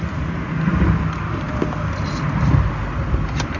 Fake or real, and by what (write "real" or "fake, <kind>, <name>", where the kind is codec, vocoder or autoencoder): real